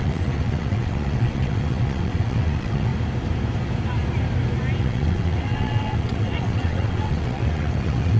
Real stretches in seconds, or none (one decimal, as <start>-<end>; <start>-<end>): 2.9-4.8